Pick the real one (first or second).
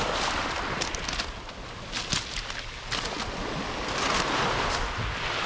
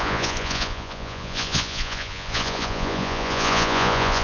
first